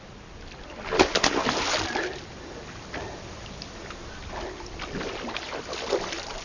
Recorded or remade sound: recorded